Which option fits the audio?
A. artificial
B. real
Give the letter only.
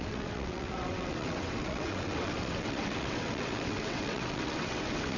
A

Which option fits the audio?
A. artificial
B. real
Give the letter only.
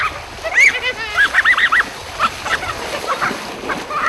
B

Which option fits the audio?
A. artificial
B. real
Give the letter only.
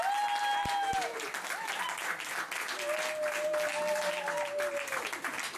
B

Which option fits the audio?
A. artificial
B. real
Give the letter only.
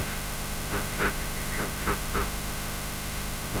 A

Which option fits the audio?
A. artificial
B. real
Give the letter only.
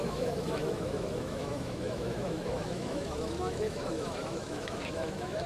A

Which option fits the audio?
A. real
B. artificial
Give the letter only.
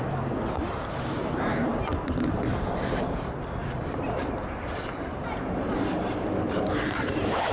B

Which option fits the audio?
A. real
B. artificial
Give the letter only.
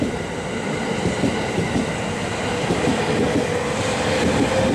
A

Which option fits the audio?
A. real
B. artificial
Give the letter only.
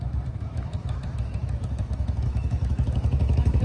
B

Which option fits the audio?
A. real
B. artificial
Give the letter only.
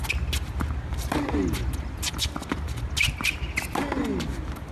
A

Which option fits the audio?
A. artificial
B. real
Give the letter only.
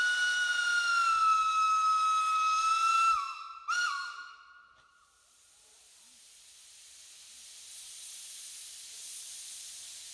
B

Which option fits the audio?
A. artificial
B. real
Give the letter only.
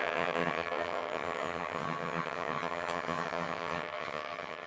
A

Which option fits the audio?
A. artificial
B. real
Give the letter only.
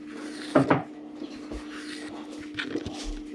B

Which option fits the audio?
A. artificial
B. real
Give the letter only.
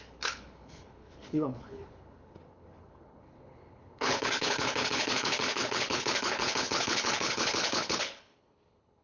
A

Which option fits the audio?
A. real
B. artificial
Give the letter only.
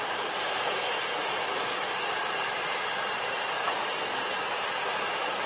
A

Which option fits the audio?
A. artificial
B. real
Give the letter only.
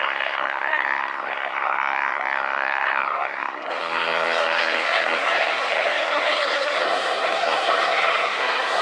A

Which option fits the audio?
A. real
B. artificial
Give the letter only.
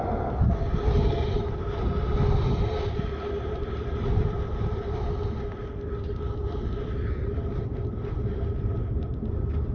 A